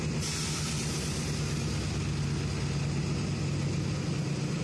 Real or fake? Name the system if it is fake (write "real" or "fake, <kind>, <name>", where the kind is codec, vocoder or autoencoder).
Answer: real